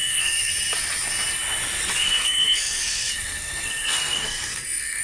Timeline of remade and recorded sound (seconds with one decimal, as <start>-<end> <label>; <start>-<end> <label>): 0.0-0.5 remade; 0.5-2.0 recorded; 2.0-5.0 remade